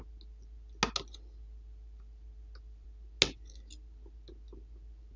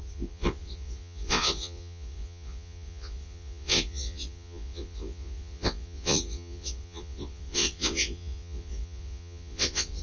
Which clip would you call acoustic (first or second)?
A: first